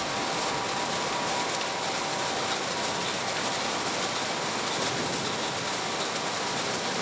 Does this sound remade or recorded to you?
recorded